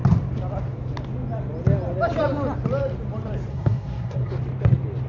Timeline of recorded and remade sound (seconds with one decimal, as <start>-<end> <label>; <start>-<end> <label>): 0.0-3.5 recorded; 3.5-4.3 remade; 4.3-5.1 recorded